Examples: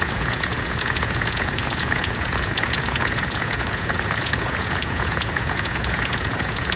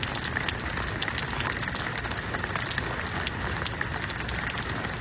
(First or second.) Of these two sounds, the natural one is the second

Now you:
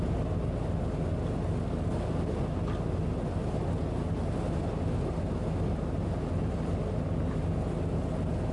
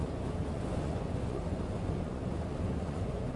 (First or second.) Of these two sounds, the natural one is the first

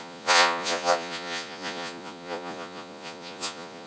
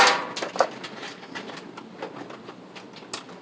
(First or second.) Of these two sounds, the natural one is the second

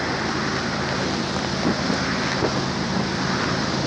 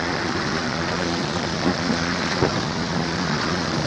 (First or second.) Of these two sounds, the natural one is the first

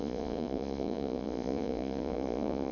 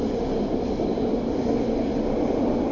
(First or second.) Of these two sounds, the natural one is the second